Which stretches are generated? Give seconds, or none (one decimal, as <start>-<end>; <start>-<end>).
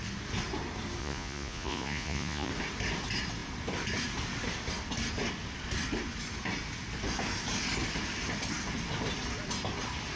1.0-2.5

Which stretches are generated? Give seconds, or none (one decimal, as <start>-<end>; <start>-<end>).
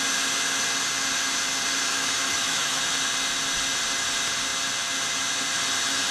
1.9-2.8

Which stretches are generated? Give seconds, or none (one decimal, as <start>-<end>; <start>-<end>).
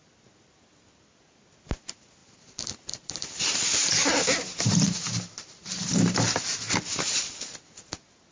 2.2-6.8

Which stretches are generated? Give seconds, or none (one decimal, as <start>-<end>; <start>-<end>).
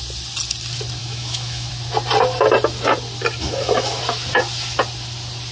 1.0-1.7; 3.4-4.0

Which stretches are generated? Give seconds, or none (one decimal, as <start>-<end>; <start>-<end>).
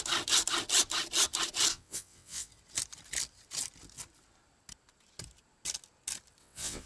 1.7-2.5; 6.4-6.9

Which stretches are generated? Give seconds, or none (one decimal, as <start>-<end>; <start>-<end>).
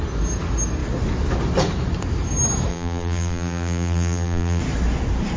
2.7-4.6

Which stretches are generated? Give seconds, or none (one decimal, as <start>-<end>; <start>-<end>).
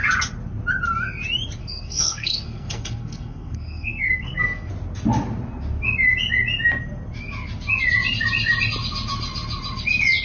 1.6-4.7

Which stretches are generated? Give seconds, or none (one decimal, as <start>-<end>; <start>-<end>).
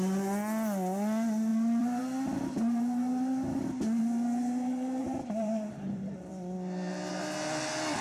1.5-2.0; 5.0-7.1